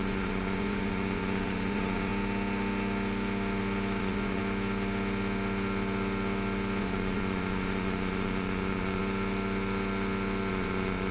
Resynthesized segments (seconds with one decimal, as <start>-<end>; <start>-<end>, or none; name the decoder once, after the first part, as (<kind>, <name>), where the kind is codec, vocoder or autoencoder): 0.0-2.1 (vocoder, Vocos); 4.0-4.4; 6.8-9.0; 10.5-11.1